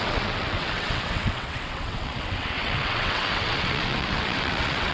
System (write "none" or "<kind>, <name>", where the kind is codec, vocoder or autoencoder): vocoder, WaveNeXt